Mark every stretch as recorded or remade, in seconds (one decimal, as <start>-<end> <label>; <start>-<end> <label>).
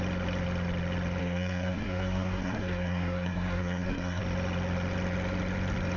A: 0.0-1.2 recorded; 1.2-4.2 remade; 4.2-6.0 recorded